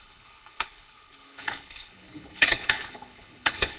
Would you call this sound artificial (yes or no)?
yes